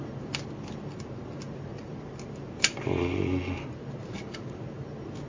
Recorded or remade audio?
recorded